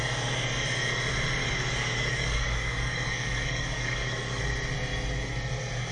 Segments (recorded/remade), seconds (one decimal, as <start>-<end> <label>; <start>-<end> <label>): 0.0-1.4 recorded; 1.4-4.4 remade; 4.4-5.9 recorded